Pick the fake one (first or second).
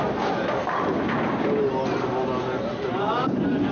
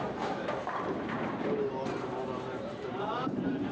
second